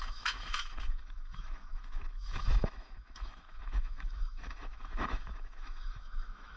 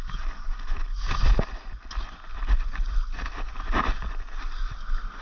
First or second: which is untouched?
second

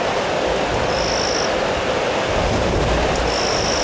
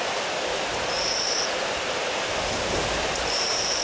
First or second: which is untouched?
first